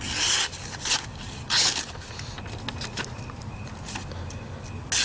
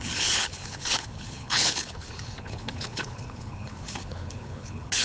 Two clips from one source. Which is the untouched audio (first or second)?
first